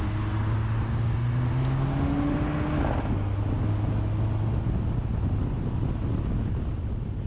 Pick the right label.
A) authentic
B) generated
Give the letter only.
A